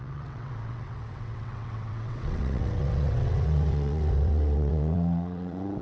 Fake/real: fake